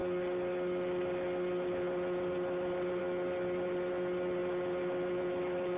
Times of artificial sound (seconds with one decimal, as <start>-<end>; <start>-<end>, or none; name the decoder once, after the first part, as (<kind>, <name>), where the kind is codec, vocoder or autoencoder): none